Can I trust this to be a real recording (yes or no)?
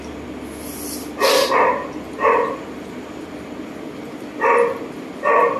yes